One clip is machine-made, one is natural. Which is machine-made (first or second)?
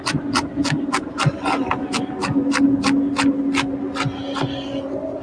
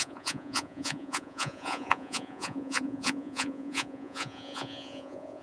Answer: second